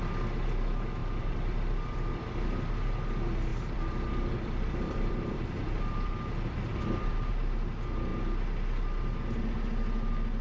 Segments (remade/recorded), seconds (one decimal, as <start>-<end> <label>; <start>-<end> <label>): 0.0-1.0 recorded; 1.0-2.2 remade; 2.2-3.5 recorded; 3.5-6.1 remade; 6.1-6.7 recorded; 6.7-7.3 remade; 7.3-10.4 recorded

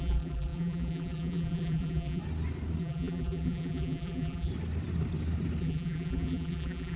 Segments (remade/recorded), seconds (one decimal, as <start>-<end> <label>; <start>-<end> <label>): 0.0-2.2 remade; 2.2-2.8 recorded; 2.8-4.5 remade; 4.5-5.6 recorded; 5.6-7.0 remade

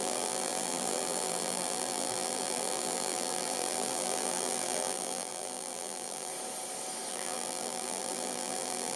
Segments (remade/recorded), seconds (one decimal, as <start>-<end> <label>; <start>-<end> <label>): 0.0-6.3 remade; 6.3-7.1 recorded; 7.1-9.0 remade